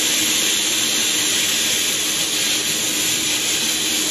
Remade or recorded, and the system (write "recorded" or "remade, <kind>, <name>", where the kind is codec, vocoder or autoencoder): remade, vocoder, BigVGAN v2